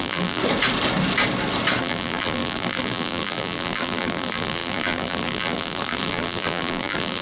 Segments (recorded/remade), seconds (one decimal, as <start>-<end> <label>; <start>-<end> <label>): 0.0-0.4 remade; 0.4-1.8 recorded; 1.8-7.2 remade